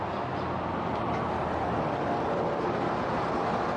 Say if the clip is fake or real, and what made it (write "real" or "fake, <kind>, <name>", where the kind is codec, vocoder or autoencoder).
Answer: real